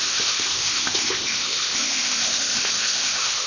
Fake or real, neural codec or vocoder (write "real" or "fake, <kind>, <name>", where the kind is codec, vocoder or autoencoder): fake, codec, ZipCodec